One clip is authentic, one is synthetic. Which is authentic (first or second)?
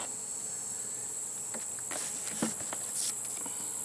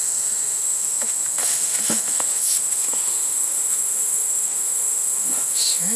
first